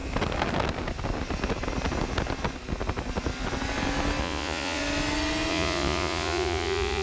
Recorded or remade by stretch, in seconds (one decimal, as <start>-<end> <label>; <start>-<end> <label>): 0.0-4.2 recorded; 4.2-4.8 remade; 4.8-5.5 recorded; 5.5-7.0 remade